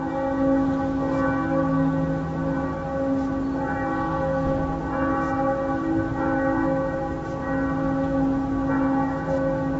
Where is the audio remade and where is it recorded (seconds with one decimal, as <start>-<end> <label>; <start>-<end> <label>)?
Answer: 0.0-9.8 recorded